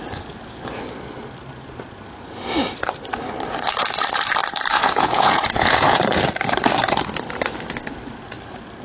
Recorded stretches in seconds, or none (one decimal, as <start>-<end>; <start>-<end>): 0.0-4.7; 6.0-8.8